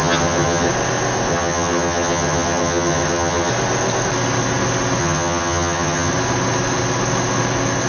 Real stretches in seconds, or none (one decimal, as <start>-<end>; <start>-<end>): 0.7-1.3; 3.5-5.0; 6.1-7.9